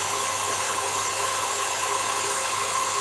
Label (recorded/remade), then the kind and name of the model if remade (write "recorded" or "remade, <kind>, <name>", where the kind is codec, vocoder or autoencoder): remade, codec, HILCodec